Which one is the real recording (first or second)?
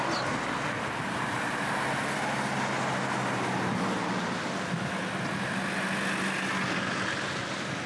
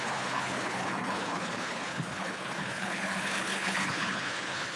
first